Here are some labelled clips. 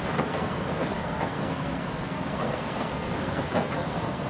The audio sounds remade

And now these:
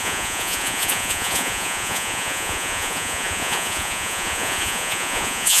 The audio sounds remade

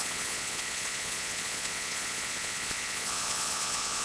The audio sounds remade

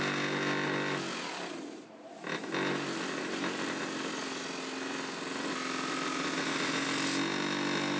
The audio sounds recorded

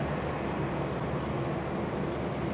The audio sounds recorded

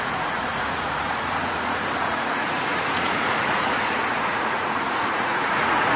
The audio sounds remade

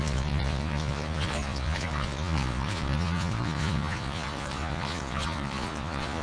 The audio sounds remade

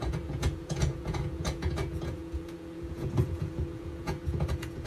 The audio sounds remade